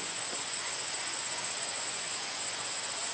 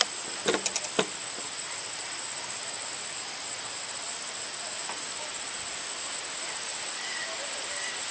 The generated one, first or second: first